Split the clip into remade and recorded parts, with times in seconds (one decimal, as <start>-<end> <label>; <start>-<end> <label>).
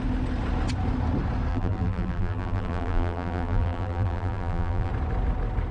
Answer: 0.0-1.5 recorded; 1.5-4.9 remade; 4.9-5.7 recorded